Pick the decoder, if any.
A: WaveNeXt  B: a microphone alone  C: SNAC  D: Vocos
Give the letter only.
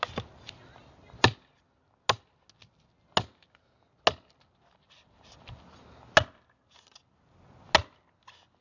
B